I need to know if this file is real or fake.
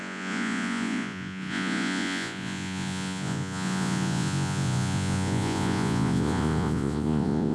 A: fake